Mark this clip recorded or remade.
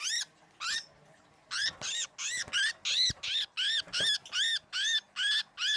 recorded